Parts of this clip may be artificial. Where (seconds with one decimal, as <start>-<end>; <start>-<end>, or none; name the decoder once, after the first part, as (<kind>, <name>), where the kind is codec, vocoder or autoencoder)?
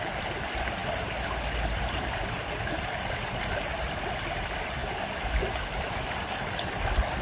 none